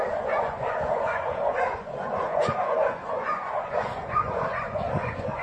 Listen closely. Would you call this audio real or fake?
fake